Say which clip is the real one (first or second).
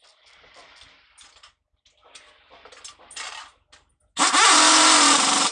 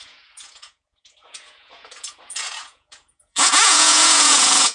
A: first